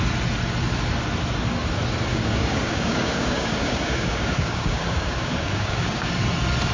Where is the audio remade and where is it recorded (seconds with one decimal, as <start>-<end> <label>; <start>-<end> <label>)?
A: 0.0-2.1 recorded; 2.1-6.1 remade; 6.1-6.7 recorded